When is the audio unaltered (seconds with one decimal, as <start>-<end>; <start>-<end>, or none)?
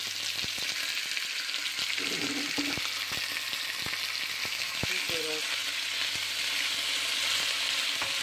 0.0-4.4; 4.9-8.2